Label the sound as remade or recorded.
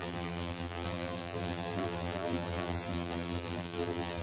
remade